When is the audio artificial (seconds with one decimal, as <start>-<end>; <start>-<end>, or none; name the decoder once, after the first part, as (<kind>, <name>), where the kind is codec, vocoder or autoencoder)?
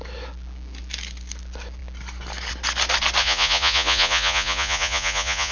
3.2-5.5 (vocoder, Vocos)